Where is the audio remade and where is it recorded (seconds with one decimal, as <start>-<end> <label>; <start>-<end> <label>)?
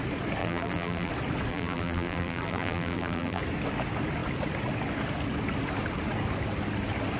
0.0-0.4 recorded; 0.4-1.1 remade; 1.1-1.5 recorded; 1.5-3.4 remade; 3.4-7.2 recorded